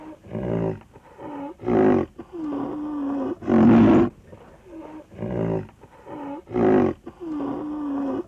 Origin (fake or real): real